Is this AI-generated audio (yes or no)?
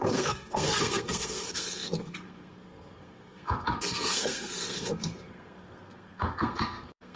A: yes